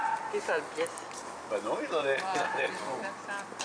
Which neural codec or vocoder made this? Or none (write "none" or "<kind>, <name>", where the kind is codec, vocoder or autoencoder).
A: none